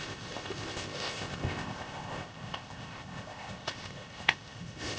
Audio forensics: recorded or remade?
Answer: remade